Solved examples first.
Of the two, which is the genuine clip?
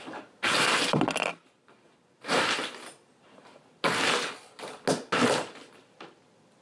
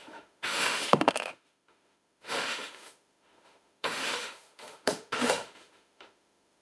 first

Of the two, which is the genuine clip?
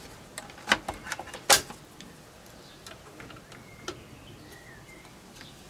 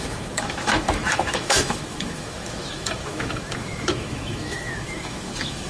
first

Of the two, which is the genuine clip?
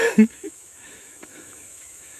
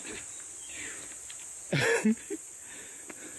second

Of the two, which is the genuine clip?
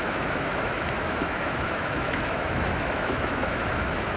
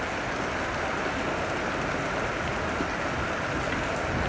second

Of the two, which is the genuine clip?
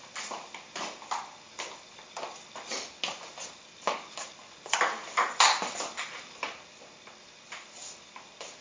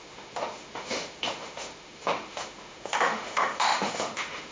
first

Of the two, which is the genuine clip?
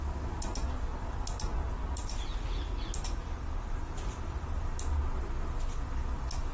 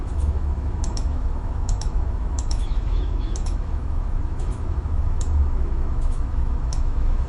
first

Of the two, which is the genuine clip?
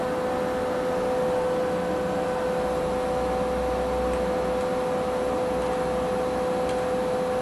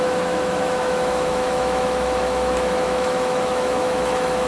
first